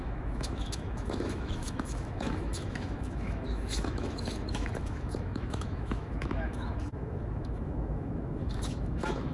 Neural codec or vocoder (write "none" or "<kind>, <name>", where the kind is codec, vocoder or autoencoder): autoencoder, DAC-VAE